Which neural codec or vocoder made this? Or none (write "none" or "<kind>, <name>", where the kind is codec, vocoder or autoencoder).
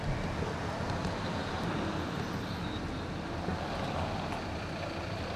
none